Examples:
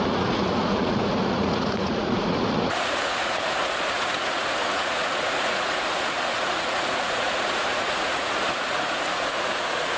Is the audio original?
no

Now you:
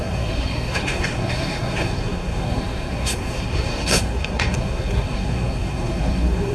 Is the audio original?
no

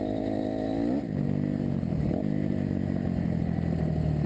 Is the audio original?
yes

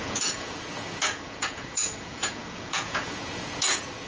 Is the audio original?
no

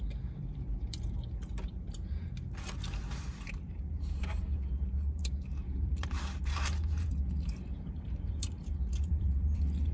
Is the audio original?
no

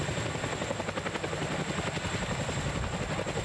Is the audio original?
yes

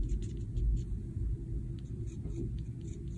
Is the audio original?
yes